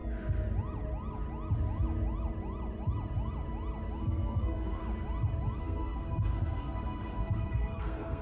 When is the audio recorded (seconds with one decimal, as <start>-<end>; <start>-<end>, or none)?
0.0-4.0; 4.8-5.6